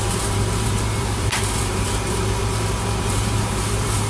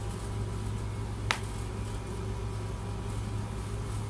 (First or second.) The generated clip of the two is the first